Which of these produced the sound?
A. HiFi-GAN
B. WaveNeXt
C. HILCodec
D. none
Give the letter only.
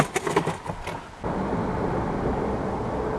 D